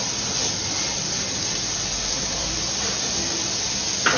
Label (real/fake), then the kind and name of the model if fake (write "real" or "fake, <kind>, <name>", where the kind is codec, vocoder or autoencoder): real